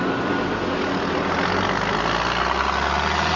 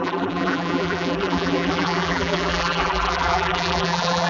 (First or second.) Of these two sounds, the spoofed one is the second